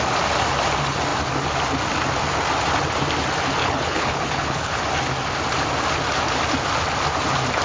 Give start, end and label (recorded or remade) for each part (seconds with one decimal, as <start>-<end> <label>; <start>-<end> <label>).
0.0-3.6 recorded; 3.6-4.8 remade; 4.8-7.6 recorded